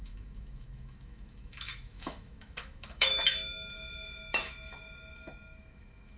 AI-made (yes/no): yes